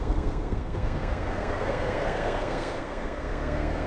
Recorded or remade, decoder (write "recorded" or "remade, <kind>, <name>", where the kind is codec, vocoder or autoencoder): remade, codec, SNAC